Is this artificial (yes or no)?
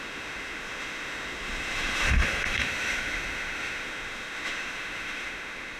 yes